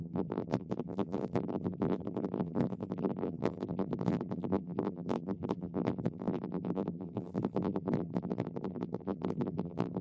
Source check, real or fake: fake